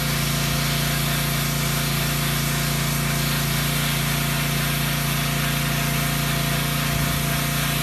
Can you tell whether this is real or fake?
real